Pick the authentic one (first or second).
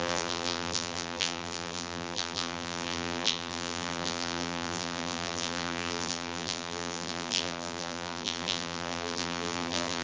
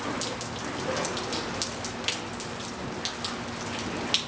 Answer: second